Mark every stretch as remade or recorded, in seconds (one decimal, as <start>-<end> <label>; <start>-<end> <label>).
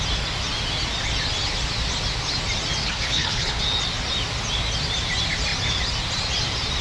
0.0-2.8 recorded; 2.8-3.6 remade; 3.6-6.8 recorded